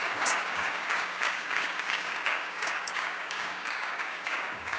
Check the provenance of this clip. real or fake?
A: fake